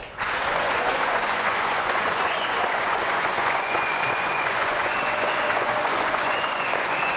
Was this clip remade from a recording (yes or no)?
yes